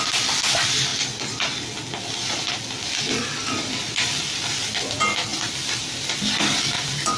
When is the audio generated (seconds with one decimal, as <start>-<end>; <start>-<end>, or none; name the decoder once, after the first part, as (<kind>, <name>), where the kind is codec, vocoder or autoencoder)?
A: none